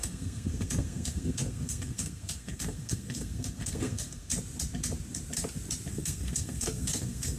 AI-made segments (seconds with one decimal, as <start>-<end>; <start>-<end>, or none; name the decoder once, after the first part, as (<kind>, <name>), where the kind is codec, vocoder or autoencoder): 0.0-4.3 (codec, SNAC); 5.9-7.4